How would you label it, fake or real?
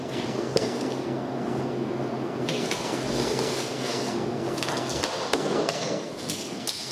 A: fake